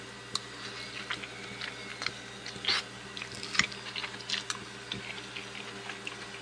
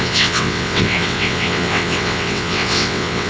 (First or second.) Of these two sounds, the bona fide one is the first